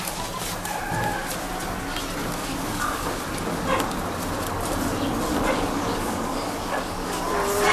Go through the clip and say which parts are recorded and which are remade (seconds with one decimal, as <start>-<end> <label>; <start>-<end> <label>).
0.0-2.2 recorded; 2.2-3.2 remade; 3.2-5.3 recorded; 5.3-7.2 remade; 7.2-7.7 recorded